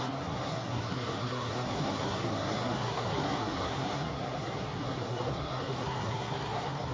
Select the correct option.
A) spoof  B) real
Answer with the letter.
A